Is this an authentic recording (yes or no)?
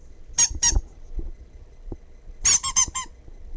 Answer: yes